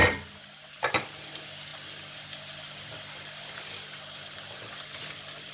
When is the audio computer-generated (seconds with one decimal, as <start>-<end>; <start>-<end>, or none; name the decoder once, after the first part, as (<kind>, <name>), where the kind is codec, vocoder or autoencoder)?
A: none